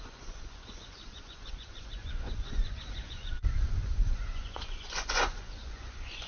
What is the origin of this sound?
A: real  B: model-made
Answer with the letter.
B